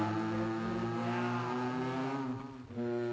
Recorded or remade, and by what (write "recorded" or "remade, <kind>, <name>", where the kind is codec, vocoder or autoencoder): recorded